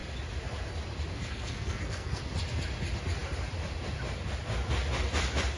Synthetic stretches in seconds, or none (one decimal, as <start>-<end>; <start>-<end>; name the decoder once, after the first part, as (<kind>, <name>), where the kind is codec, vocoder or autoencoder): 1.1-2.2 (codec, SNAC)